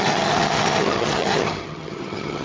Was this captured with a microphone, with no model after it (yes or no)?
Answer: no